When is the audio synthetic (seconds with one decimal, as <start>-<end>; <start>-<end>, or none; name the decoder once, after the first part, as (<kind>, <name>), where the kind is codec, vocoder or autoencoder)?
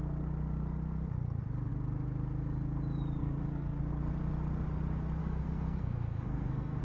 3.2-3.8 (codec, SNAC); 5.2-6.8